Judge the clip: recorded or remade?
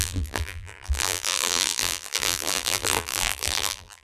remade